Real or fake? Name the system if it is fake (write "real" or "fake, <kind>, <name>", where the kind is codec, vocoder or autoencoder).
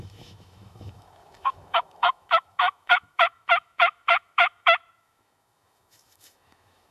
fake, autoencoder, DAC-VAE